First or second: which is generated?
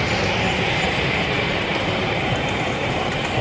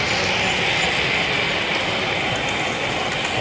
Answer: first